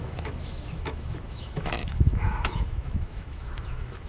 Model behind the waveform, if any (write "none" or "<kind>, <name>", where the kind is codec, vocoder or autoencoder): autoencoder, DAC-VAE